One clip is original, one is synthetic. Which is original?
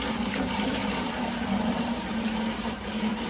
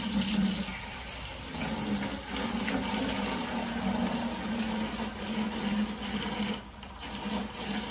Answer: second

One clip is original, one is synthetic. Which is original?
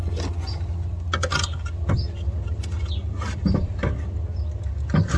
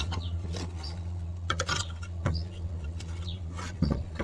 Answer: first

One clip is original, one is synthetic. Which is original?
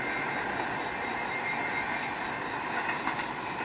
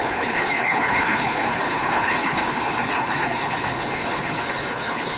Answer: first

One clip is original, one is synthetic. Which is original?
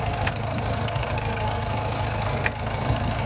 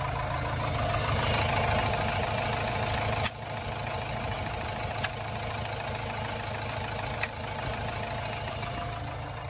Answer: second